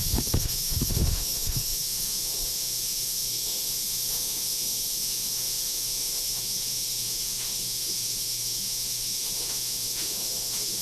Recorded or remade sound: remade